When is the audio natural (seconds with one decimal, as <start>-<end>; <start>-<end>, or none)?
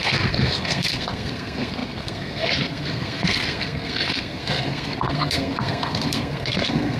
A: none